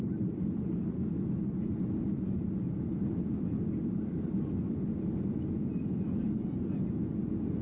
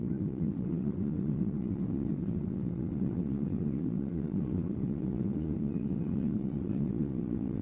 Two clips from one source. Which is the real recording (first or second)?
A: first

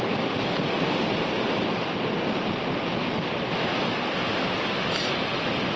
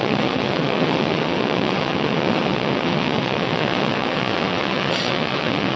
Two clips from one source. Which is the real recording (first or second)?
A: first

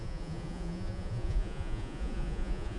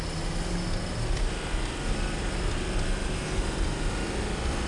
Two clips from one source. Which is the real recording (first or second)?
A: second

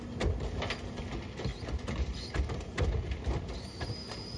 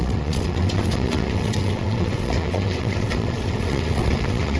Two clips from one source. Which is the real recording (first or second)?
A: first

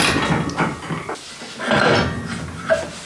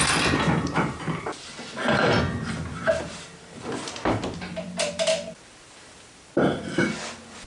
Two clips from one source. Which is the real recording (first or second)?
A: first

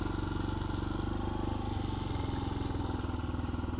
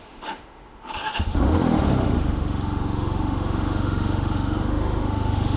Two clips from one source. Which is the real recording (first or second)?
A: first